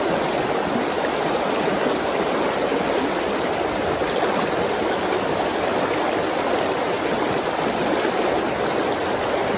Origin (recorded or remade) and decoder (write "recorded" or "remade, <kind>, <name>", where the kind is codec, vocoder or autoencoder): recorded